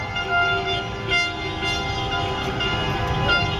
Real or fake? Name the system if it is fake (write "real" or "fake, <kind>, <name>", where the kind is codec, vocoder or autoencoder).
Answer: real